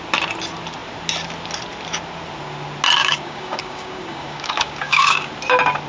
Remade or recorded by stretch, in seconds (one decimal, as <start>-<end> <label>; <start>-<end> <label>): 0.0-3.0 recorded; 3.0-5.3 remade; 5.3-5.9 recorded